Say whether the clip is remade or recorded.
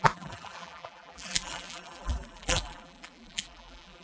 remade